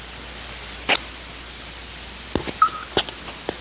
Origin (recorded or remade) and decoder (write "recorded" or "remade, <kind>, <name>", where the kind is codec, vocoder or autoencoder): recorded